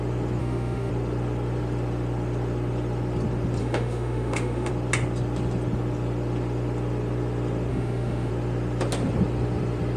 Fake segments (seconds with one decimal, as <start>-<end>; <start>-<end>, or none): 0.4-0.9; 3.6-4.7; 7.7-8.3